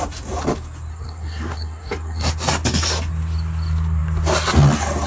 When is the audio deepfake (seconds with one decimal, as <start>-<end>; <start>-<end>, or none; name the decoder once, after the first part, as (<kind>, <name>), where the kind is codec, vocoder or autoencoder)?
0.9-2.3 (codec, SNAC)

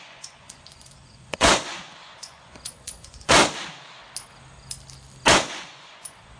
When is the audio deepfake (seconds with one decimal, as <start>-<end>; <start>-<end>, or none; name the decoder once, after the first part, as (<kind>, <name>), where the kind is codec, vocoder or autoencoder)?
0.0-3.4 (vocoder, Vocos); 5.3-6.4

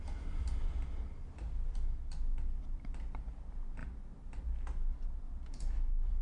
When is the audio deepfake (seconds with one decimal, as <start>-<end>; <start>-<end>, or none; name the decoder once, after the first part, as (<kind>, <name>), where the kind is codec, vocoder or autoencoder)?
none

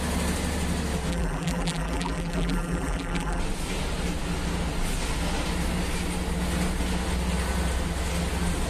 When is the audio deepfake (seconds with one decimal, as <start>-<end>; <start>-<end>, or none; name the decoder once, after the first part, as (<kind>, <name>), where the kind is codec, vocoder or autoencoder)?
1.1-3.4 (vocoder, BigVGAN v2)